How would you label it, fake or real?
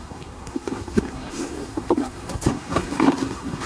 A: fake